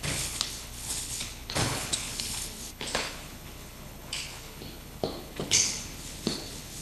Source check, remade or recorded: remade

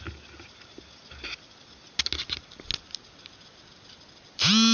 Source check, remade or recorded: recorded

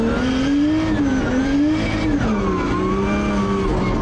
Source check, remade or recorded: recorded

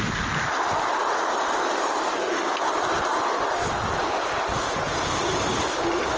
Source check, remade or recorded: recorded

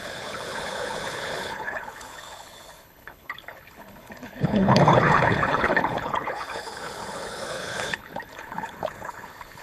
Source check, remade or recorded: remade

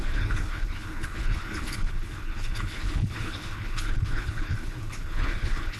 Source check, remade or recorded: remade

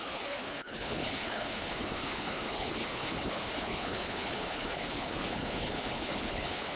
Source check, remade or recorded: remade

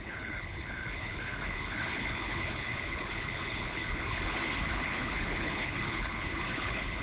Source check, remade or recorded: remade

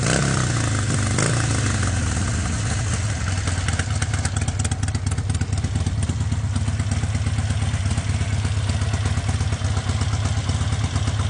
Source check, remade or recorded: recorded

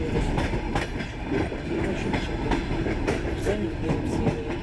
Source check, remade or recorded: recorded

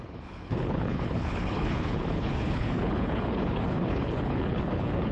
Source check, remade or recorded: remade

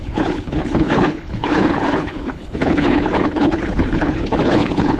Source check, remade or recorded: remade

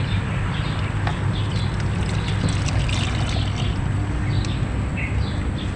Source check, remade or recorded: recorded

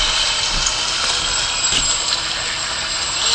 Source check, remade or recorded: recorded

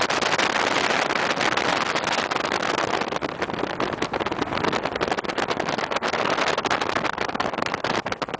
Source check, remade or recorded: recorded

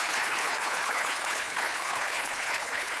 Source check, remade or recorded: remade